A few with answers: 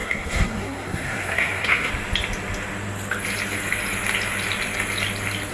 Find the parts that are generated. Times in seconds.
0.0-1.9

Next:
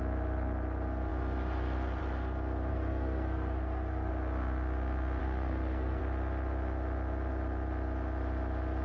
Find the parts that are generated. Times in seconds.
2.7-4.1; 5.2-6.0

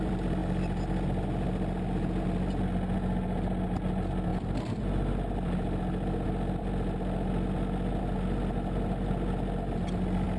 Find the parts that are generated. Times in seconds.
none

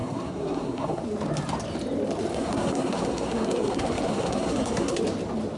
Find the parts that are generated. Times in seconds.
0.0-1.0; 2.3-5.0

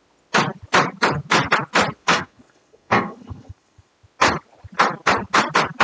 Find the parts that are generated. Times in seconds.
2.0-3.9

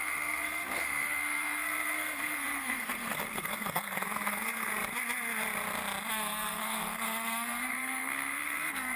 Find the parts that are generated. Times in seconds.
0.0-4.7; 6.1-9.0